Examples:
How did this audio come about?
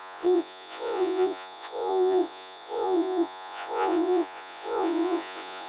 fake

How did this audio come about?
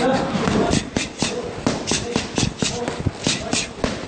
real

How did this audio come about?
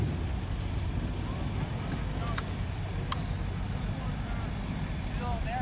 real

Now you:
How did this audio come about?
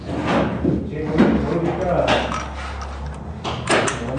real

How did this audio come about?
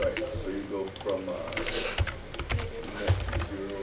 real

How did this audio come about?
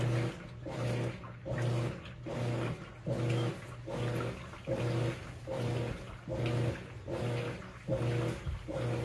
real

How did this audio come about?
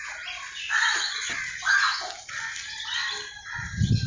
real